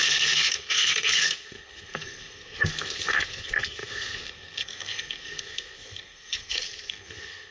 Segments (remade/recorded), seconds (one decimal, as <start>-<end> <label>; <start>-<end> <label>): 0.0-7.5 remade